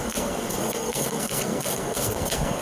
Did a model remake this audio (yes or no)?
yes